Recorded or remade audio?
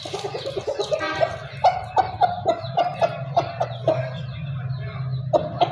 recorded